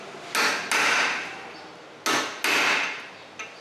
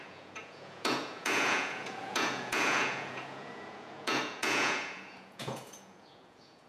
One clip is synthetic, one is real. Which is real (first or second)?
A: first